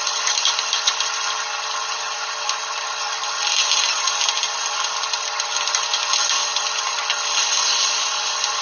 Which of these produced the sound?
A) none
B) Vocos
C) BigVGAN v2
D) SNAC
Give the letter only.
A